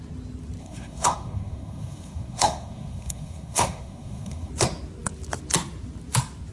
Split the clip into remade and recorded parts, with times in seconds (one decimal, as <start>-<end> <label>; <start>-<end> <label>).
0.0-0.6 recorded; 0.6-4.5 remade; 4.5-6.5 recorded

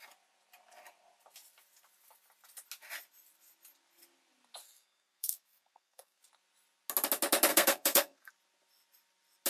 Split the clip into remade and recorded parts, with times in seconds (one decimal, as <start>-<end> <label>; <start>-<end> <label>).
0.0-4.6 recorded; 4.6-6.2 remade; 6.2-7.5 recorded; 7.5-8.3 remade; 8.3-9.5 recorded